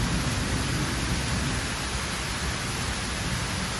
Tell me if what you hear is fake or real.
real